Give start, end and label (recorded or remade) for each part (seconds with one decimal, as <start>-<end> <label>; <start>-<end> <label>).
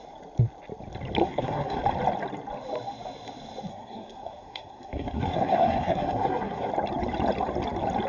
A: 0.0-1.2 recorded; 1.2-1.8 remade; 1.8-3.7 recorded; 3.7-6.7 remade; 6.7-8.1 recorded